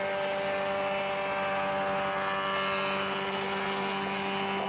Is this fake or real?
real